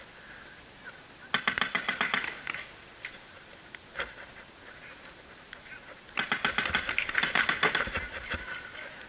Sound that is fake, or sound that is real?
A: real